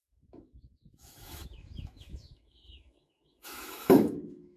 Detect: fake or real fake